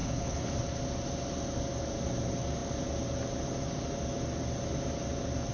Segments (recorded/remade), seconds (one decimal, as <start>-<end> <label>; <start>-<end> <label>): 0.0-0.5 remade; 0.5-5.5 recorded